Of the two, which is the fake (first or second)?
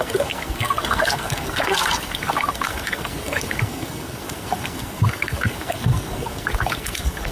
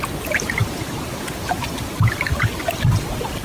first